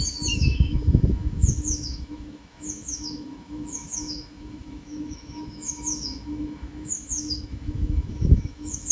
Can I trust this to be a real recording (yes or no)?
no